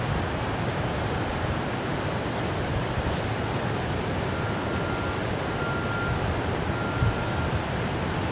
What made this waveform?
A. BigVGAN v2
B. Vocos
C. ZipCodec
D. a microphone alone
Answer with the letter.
D